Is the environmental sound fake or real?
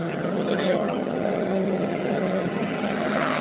fake